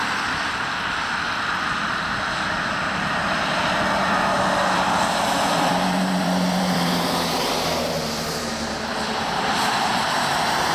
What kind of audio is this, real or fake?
fake